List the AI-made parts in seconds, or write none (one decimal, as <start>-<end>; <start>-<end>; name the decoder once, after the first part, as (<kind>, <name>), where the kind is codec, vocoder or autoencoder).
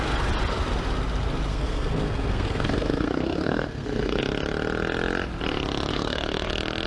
1.5-4.2 (codec, SNAC); 5.9-6.5